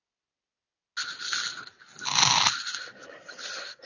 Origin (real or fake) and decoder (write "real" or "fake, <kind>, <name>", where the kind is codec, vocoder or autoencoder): real